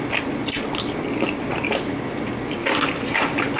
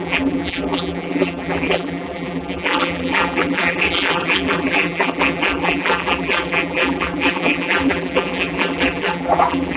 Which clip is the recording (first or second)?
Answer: first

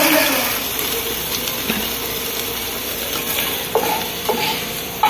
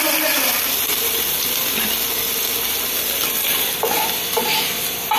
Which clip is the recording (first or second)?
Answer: second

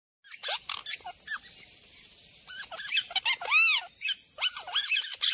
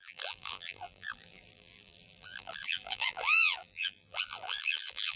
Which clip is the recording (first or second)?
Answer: first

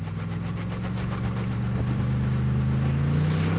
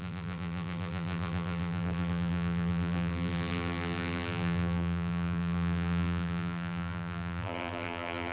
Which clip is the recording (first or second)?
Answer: first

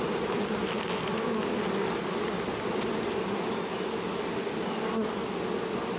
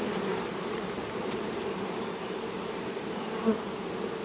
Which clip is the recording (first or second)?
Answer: first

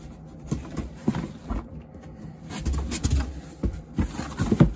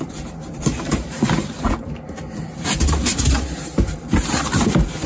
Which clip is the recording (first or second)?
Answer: first